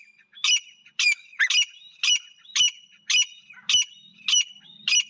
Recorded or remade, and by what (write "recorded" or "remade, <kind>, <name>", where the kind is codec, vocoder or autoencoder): recorded